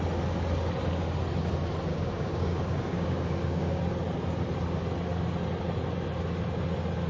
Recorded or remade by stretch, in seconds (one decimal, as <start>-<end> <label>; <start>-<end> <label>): 0.0-1.9 recorded; 1.9-3.8 remade; 3.8-7.1 recorded